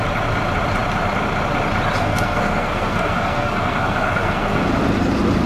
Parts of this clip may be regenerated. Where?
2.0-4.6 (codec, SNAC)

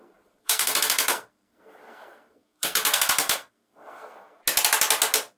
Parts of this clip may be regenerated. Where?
0.0-4.4 (codec, SNAC)

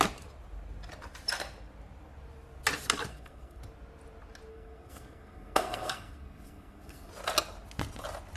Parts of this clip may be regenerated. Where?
3.1-3.6 (codec, SNAC); 4.5-7.1

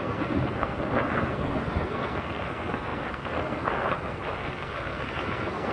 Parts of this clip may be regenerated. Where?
0.0-5.7 (codec, SNAC)